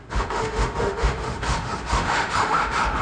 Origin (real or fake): fake